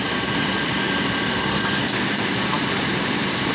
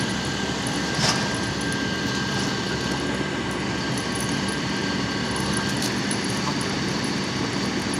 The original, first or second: second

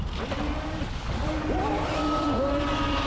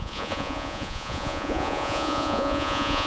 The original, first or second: first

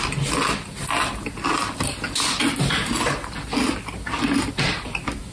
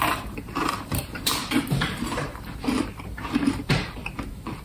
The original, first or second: first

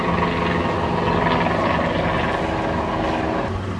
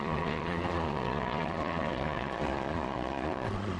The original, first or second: first